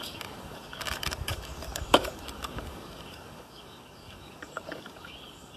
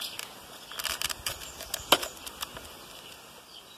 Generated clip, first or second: first